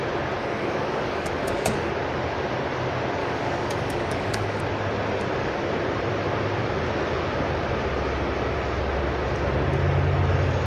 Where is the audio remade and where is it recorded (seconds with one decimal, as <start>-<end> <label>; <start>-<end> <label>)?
0.0-0.4 recorded; 0.4-1.9 remade; 1.9-3.2 recorded; 3.2-4.6 remade; 4.6-10.7 recorded